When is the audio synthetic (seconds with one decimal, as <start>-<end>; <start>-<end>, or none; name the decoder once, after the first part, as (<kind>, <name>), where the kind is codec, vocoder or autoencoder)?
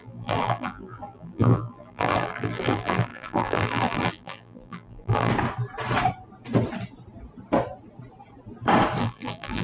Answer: 0.0-5.3 (vocoder, BigVGAN v2); 9.0-9.6